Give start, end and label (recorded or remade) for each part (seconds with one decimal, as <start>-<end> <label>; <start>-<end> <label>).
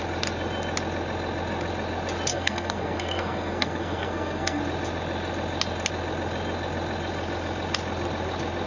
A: 0.0-2.3 recorded; 2.3-4.6 remade; 4.6-8.7 recorded